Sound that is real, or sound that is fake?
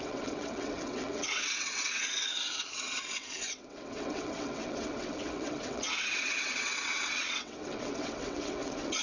fake